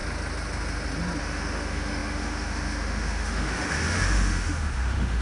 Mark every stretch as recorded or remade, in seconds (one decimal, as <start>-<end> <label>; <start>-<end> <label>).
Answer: 0.0-1.2 recorded; 1.2-5.2 remade